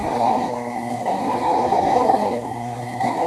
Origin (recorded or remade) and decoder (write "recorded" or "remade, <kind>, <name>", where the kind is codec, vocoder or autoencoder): remade, codec, SNAC